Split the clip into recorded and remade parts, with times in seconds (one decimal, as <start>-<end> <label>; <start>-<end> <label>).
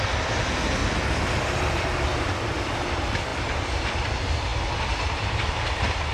0.0-0.8 remade; 0.8-1.4 recorded; 1.4-6.1 remade